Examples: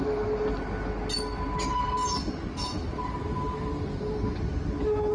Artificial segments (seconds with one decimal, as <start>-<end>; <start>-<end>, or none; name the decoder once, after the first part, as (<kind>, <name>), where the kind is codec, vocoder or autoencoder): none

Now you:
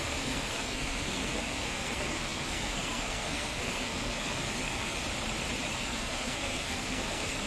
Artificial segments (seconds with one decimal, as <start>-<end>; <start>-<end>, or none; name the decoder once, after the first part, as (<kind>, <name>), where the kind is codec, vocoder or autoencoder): 0.0-5.0 (codec, SNAC); 5.7-7.5

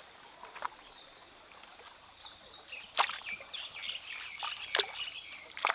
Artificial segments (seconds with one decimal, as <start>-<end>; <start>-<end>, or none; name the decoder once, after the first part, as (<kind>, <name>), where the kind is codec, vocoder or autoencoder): none